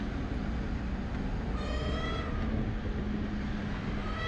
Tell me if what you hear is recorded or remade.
recorded